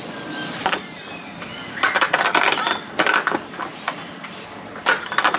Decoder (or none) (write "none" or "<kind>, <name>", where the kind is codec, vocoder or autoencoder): none